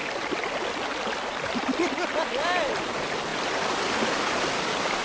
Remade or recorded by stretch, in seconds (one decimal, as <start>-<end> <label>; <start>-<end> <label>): 0.0-5.0 recorded